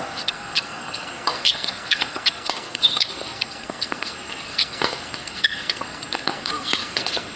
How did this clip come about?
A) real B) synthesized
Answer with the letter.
B